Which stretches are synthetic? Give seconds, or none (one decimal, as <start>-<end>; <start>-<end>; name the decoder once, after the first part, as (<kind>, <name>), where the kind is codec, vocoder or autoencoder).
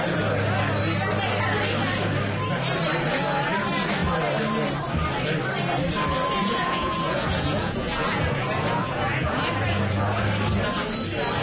6.4-10.2 (vocoder, Vocos)